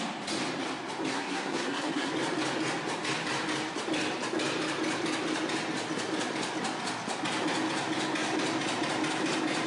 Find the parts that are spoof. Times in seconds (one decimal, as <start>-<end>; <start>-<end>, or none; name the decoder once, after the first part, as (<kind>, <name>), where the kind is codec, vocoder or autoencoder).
1.1-2.1 (codec, SNAC)